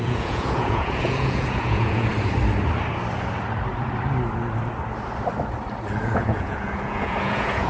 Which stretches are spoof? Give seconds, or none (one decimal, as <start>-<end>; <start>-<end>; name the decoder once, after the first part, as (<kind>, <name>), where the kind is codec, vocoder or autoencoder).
0.0-2.1 (vocoder, Vocos); 6.0-7.7